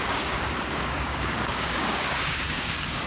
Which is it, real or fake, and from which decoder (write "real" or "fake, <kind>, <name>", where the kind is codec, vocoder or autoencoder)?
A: fake, codec, DAC